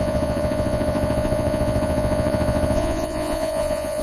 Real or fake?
fake